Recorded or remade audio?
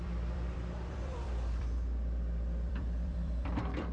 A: remade